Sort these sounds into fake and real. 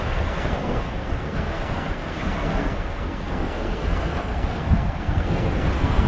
fake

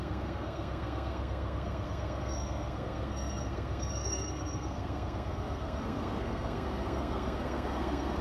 fake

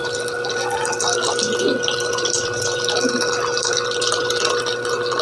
real